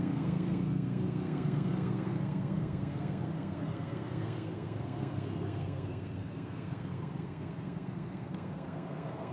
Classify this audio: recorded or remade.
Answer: remade